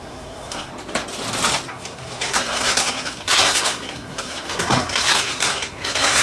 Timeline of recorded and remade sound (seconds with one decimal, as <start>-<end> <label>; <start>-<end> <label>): 0.0-0.7 remade; 0.7-1.7 recorded; 1.7-6.2 remade